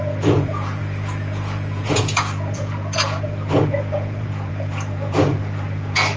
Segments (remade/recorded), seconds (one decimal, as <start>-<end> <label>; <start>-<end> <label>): 0.0-6.2 remade